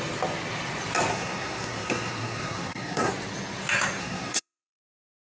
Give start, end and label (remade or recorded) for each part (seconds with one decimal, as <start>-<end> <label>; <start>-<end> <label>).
0.0-1.1 recorded; 1.1-3.1 remade; 3.1-4.0 recorded; 4.0-5.3 remade